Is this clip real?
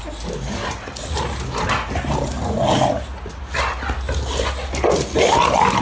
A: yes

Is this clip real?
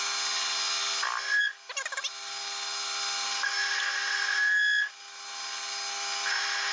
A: yes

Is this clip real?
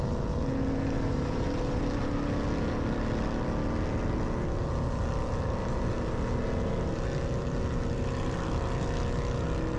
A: yes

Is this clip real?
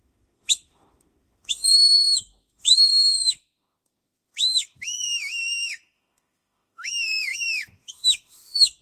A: no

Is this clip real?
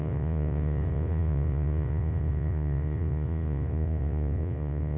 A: no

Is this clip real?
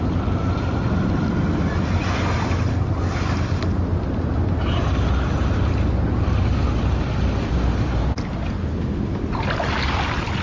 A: yes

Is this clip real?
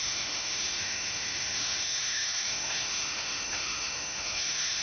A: no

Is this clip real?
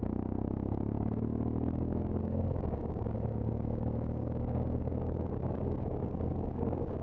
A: no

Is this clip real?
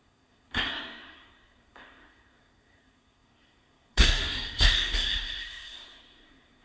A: no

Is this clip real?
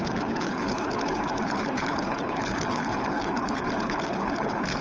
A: no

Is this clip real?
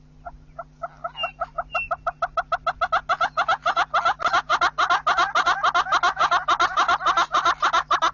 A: yes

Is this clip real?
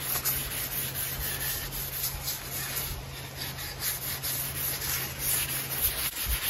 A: yes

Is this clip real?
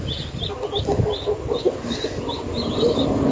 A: yes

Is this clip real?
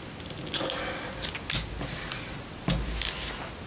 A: yes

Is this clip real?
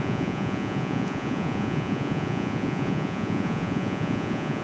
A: no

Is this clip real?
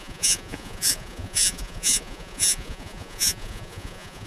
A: no